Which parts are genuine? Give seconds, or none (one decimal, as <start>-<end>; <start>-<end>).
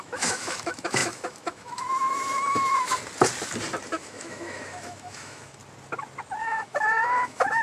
3.0-3.9; 5.6-6.4